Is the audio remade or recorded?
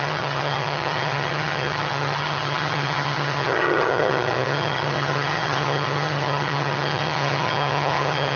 remade